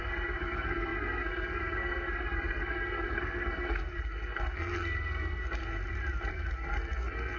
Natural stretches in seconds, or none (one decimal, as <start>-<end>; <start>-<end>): 5.6-6.3